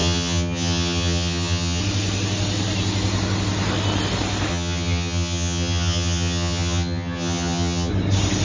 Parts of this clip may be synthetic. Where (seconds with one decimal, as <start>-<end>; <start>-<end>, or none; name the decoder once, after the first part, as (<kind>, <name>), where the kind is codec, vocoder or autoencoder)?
0.0-1.8 (vocoder, HiFi-GAN); 4.5-7.9

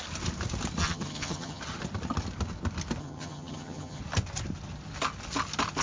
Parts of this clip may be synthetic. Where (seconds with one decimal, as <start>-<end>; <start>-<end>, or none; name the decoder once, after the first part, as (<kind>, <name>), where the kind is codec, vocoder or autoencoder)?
0.8-1.6 (vocoder, HiFi-GAN); 3.0-4.0

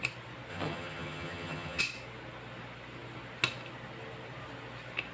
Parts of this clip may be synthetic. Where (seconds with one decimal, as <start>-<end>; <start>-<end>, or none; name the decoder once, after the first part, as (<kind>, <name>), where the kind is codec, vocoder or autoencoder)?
0.5-1.8 (vocoder, HiFi-GAN)

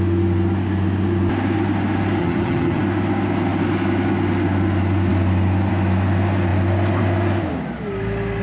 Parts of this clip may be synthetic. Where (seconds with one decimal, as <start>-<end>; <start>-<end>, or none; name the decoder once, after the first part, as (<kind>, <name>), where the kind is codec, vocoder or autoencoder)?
2.2-2.8 (vocoder, HiFi-GAN)

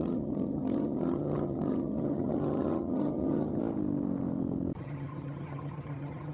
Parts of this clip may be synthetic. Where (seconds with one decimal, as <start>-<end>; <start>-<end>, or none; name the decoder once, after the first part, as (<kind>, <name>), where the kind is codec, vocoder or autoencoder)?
0.0-3.6 (vocoder, HiFi-GAN); 4.8-6.3

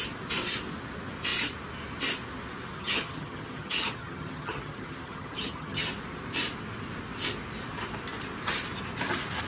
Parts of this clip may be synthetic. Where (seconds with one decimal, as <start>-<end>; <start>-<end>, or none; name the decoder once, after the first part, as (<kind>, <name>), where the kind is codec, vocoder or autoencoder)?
2.7-5.9 (vocoder, HiFi-GAN)

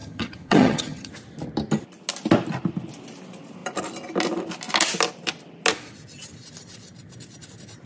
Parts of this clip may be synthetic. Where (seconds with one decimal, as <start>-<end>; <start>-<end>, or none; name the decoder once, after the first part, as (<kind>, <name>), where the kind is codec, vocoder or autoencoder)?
0.0-1.1 (vocoder, HiFi-GAN)

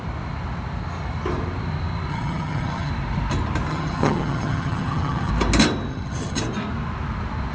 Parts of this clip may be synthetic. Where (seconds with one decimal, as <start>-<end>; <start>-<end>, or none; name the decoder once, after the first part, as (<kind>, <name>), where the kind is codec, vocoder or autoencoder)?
2.1-2.9 (vocoder, HiFi-GAN); 3.7-5.3; 5.9-6.4